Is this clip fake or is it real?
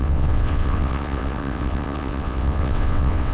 fake